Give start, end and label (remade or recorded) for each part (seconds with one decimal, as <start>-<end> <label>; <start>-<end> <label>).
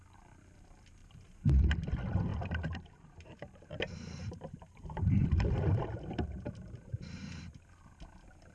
0.0-1.0 recorded; 1.0-1.5 remade; 1.5-2.3 recorded; 2.3-7.4 remade; 7.4-8.5 recorded